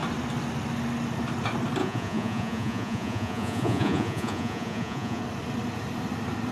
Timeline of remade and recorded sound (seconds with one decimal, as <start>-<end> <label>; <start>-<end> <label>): 0.0-1.8 recorded; 1.8-5.2 remade; 5.2-6.5 recorded